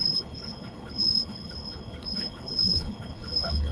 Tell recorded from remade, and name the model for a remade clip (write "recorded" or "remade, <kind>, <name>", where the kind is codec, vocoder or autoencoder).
remade, codec, HILCodec